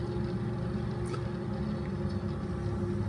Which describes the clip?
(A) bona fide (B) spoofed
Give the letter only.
A